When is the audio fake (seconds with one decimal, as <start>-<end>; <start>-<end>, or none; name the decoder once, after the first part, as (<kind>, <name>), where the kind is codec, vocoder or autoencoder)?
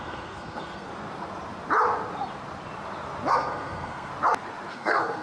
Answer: 0.0-0.9 (codec, SNAC); 3.3-4.1; 4.7-5.2